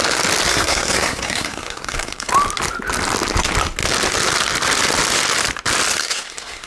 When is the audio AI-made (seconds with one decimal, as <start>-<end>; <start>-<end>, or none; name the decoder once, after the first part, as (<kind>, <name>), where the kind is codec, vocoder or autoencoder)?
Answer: 0.5-2.3 (codec, SNAC); 5.9-6.7